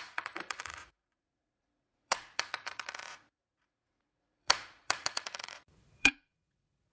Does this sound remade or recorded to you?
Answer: remade